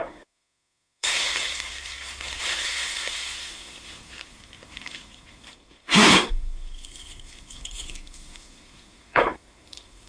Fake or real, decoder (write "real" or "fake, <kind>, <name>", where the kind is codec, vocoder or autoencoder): fake, codec, SNAC